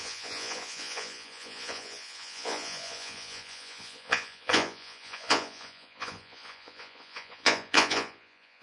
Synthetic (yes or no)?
yes